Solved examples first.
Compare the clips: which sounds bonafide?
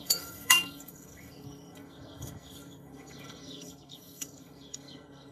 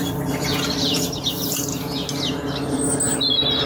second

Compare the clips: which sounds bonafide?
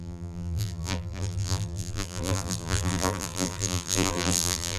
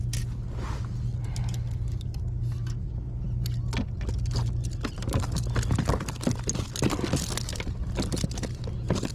second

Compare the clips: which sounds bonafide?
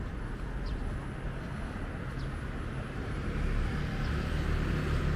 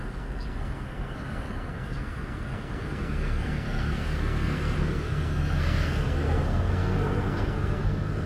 first